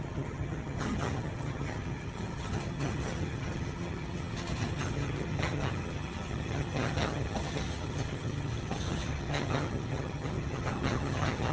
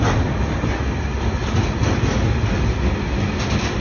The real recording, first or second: second